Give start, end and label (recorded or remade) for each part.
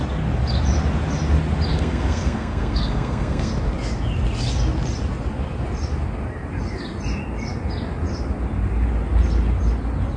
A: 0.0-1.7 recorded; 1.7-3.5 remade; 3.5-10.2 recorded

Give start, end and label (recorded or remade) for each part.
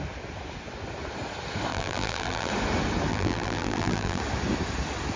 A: 0.0-1.7 recorded; 1.7-2.5 remade; 2.5-3.1 recorded; 3.1-4.2 remade; 4.2-5.2 recorded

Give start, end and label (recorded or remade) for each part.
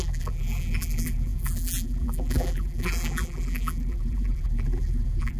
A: 0.0-5.4 remade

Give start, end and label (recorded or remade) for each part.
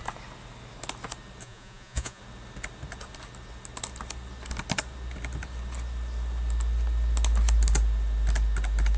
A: 0.0-1.4 recorded; 1.4-2.2 remade; 2.2-9.0 recorded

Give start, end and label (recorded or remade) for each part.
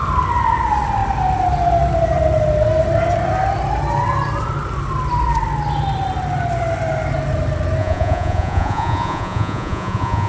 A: 0.0-7.8 recorded; 7.8-10.3 remade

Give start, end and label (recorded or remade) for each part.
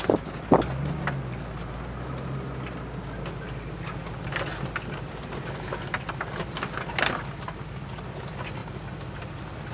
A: 0.0-9.7 recorded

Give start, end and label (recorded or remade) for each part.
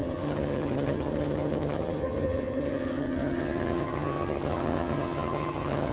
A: 0.0-5.9 remade